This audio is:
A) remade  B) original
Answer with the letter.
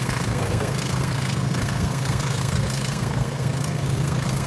A